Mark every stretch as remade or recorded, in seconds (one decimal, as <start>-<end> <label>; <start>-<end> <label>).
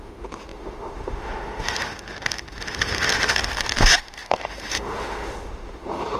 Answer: 0.0-6.2 remade